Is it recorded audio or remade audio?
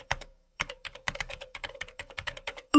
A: remade